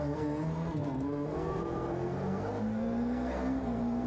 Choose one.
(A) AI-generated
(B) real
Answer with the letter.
A